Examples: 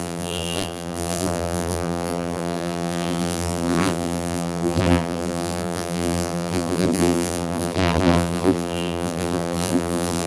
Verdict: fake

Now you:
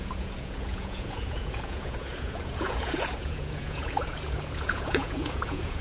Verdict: fake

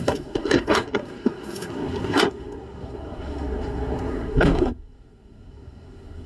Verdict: fake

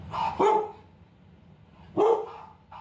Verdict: real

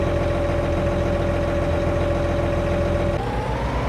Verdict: real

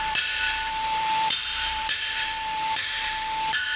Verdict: fake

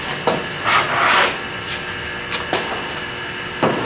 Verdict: real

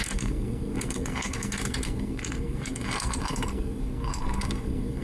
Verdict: fake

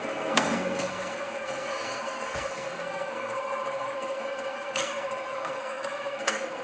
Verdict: fake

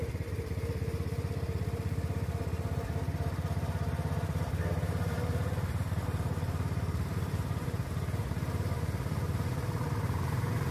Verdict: fake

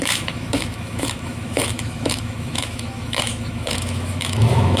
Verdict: fake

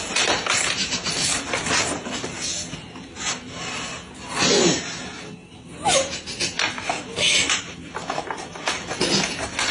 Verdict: real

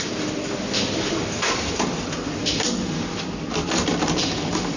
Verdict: fake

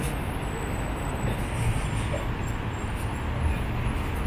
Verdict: real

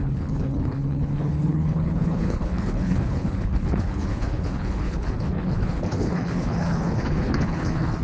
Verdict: fake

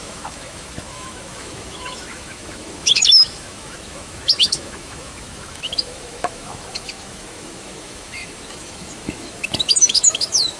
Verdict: fake